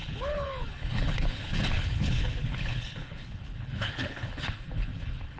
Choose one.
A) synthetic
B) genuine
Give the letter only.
A